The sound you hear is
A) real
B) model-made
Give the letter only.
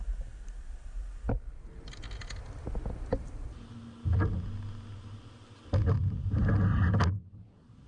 A